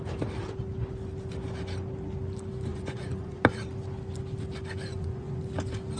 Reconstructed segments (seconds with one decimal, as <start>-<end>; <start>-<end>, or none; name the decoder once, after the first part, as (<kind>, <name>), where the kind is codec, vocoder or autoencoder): 2.7-3.4 (vocoder, Vocos); 4.9-5.4